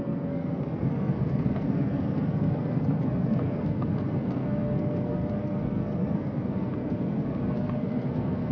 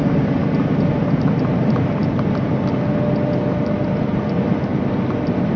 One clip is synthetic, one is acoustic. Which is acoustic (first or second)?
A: second